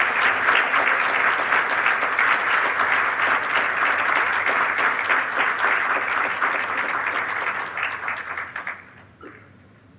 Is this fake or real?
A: real